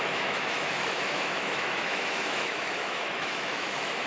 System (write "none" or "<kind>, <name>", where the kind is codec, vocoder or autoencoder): autoencoder, DAC-VAE